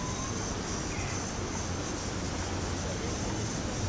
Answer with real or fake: real